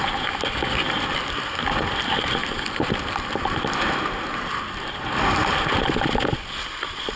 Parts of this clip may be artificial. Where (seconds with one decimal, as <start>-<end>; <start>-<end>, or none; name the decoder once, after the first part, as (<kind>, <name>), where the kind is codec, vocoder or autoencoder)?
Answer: none